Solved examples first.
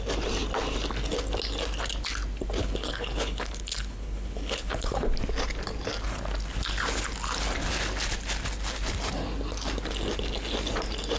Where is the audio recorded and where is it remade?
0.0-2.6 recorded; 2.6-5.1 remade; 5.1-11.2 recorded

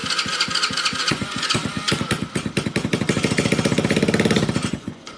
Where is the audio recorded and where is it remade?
0.0-1.1 recorded; 1.1-1.6 remade; 1.6-4.7 recorded; 4.7-5.2 remade

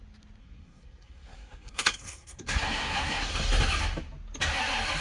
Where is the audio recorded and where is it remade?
0.0-0.4 recorded; 0.4-3.3 remade; 3.3-5.0 recorded

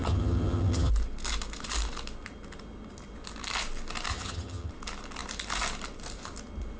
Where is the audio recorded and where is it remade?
0.0-0.9 remade; 0.9-4.1 recorded; 4.1-4.7 remade; 4.7-6.8 recorded

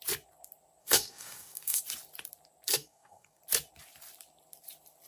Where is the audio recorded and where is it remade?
0.0-0.8 recorded; 0.8-1.8 remade; 1.8-2.7 recorded; 2.7-3.4 remade; 3.4-5.1 recorded

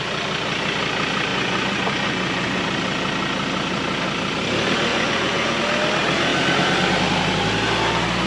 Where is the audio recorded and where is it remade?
0.0-1.3 recorded; 1.3-2.6 remade; 2.6-4.9 recorded; 4.9-5.6 remade; 5.6-8.3 recorded

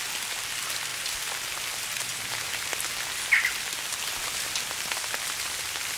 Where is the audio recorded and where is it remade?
0.0-6.0 recorded

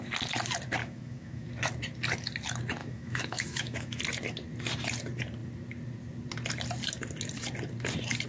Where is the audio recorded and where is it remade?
0.0-0.8 recorded; 0.8-1.5 remade; 1.5-2.8 recorded; 2.8-4.0 remade; 4.0-8.3 recorded